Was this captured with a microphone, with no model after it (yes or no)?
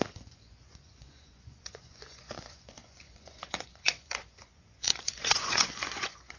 no